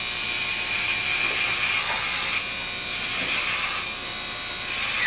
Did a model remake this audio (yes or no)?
no